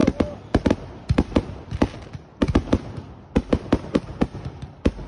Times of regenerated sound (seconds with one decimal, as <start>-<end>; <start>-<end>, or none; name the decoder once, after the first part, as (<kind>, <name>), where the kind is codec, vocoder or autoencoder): none